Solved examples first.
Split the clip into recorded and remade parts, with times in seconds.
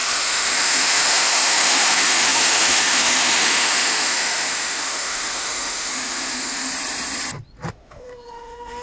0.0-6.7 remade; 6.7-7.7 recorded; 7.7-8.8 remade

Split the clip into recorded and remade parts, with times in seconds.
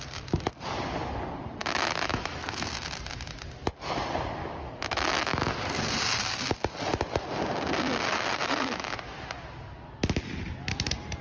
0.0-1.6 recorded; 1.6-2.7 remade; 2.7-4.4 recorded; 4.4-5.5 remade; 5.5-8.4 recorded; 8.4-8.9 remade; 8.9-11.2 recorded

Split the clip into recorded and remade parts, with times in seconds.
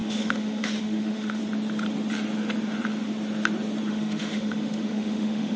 0.0-1.4 remade; 1.4-3.9 recorded; 3.9-5.6 remade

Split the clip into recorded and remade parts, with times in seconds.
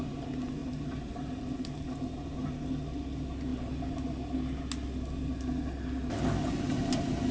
0.0-7.3 recorded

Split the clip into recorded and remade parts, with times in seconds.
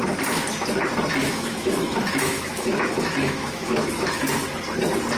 0.0-1.2 recorded; 1.2-4.3 remade; 4.3-5.2 recorded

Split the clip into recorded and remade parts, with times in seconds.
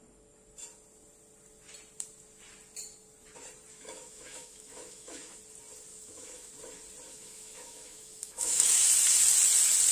0.0-3.7 recorded; 3.7-5.4 remade; 5.4-5.9 recorded; 5.9-6.5 remade; 6.5-7.1 recorded; 7.1-8.9 remade; 8.9-9.9 recorded